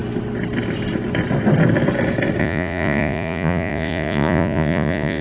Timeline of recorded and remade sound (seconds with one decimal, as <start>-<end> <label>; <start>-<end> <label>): 0.0-2.4 recorded; 2.4-5.2 remade